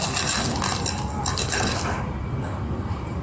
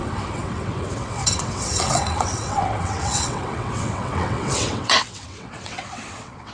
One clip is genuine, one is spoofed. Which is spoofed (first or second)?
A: second